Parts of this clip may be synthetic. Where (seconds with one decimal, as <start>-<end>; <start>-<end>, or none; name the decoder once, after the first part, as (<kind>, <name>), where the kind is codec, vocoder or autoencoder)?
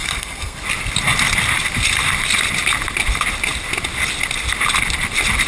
0.0-0.6 (codec, SNAC)